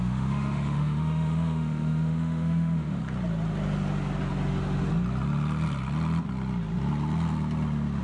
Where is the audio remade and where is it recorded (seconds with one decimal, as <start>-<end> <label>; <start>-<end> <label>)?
0.0-3.0 remade; 3.0-8.0 recorded